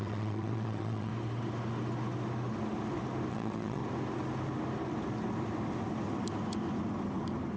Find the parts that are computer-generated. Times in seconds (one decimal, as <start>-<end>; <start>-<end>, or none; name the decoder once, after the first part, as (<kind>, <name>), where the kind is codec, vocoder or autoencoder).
0.0-1.1 (vocoder, WaveNeXt); 3.3-3.8